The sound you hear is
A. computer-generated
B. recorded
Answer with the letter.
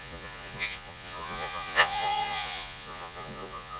A